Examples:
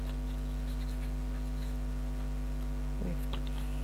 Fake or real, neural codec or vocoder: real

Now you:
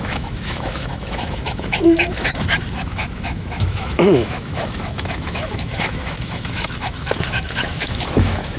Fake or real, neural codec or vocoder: fake, autoencoder, DAC-VAE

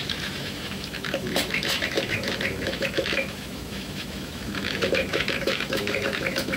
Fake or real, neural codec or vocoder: fake, autoencoder, DAC-VAE